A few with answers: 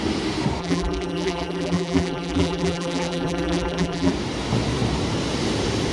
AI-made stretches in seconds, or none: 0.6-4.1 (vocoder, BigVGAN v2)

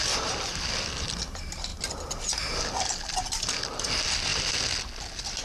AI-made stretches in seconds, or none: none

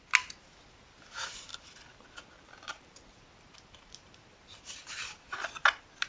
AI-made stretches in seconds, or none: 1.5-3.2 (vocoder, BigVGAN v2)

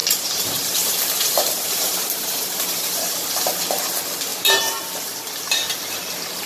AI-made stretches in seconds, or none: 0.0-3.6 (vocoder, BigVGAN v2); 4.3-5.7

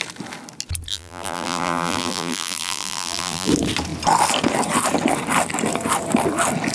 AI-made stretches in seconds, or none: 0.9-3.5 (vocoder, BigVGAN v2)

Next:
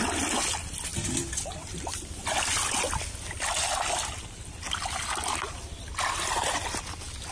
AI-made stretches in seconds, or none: none

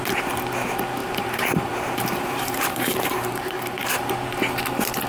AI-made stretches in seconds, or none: 1.0-4.1 (vocoder, BigVGAN v2)